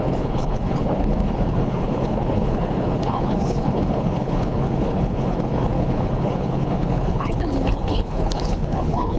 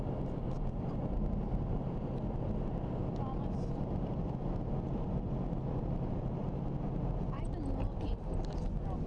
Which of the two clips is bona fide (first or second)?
second